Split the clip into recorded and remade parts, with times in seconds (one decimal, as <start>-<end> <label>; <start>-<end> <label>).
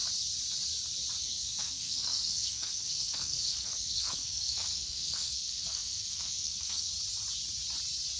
0.0-1.2 recorded; 1.2-6.9 remade; 6.9-8.2 recorded